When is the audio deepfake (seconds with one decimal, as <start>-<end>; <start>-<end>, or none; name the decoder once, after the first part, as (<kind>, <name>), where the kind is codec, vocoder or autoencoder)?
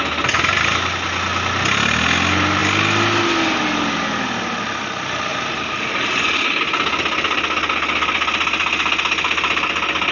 none